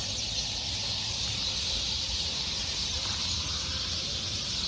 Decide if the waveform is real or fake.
fake